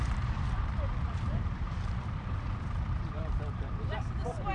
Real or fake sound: fake